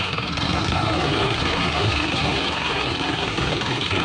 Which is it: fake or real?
fake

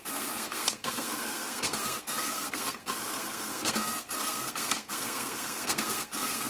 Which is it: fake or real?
fake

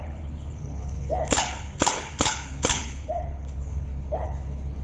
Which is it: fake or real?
fake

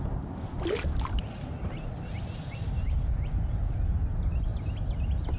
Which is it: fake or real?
real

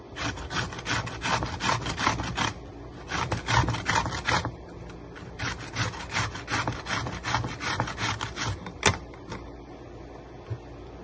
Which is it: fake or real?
real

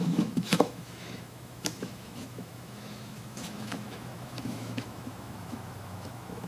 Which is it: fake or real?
fake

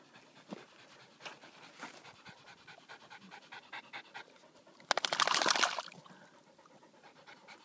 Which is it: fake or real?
real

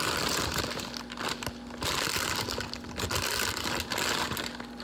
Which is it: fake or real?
real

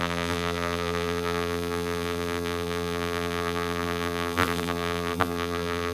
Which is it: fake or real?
fake